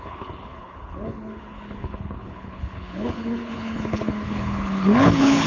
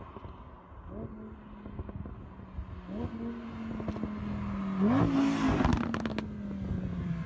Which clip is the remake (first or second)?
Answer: first